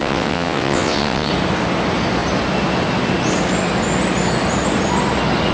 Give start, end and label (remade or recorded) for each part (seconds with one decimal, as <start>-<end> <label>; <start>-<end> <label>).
0.0-1.3 remade; 1.3-5.5 recorded